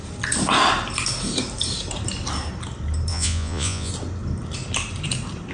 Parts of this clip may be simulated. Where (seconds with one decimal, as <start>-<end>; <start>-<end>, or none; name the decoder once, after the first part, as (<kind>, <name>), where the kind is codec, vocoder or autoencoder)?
3.1-3.9 (vocoder, Vocos)